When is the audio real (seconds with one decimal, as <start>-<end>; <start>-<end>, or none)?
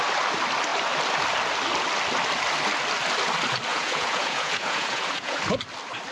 0.0-3.7; 5.4-6.1